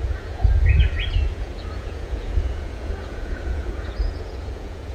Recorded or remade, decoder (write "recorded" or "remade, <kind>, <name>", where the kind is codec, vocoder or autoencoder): remade, vocoder, Vocos